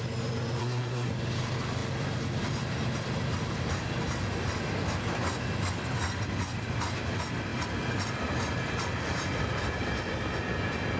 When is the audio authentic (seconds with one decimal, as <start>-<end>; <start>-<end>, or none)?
0.0-0.6; 1.1-11.0